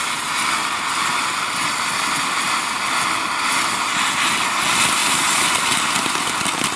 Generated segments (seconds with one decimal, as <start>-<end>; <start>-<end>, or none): none